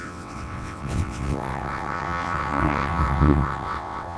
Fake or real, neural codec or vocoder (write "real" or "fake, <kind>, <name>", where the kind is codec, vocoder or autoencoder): fake, vocoder, WaveNeXt